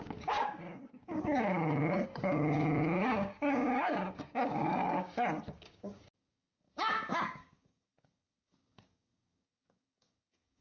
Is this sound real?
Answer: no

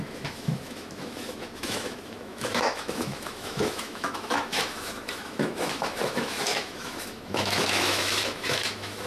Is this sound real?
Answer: no